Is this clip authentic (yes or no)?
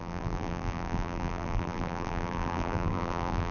no